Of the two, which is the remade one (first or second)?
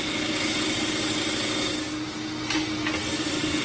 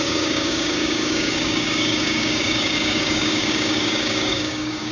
second